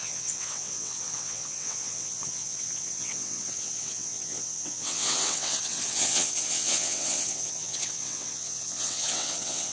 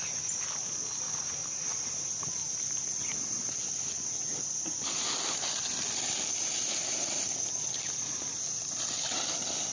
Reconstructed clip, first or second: first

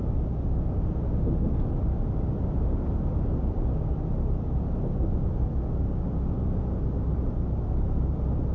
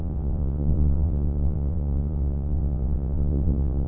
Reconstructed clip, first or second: second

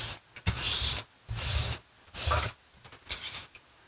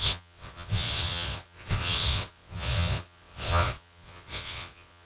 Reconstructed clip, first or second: second